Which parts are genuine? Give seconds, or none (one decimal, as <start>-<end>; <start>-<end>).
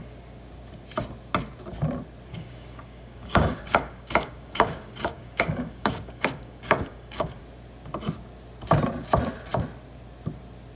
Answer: 0.0-2.3; 7.4-10.8